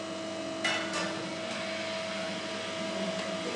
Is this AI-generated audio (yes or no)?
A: no